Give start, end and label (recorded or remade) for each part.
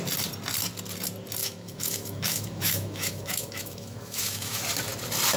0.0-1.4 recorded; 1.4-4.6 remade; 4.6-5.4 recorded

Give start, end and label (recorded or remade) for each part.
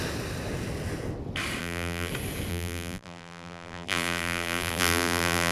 0.0-1.6 recorded; 1.6-2.1 remade; 2.1-2.5 recorded; 2.5-5.5 remade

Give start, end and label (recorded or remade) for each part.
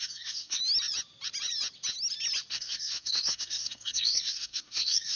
0.0-0.6 remade; 0.6-2.5 recorded; 2.5-5.2 remade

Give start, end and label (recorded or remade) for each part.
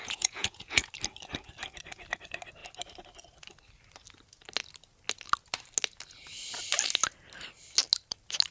0.0-0.9 remade; 0.9-8.5 recorded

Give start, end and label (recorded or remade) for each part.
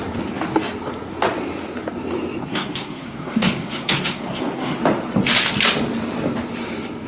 0.0-2.4 recorded; 2.4-4.8 remade; 4.8-7.1 recorded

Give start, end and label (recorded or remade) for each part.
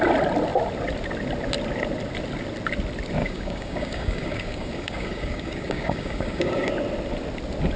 0.0-3.2 recorded; 3.2-6.7 remade; 6.7-7.8 recorded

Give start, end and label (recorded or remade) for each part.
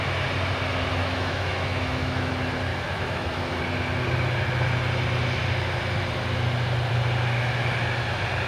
0.0-1.0 recorded; 1.0-2.3 remade; 2.3-2.7 recorded; 2.7-3.6 remade; 3.6-8.5 recorded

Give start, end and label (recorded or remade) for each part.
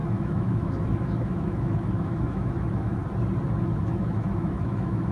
0.0-3.0 remade; 3.0-3.6 recorded; 3.6-5.1 remade